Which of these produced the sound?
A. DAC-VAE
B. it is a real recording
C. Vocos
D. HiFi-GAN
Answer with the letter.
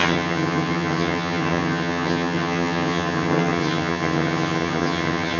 D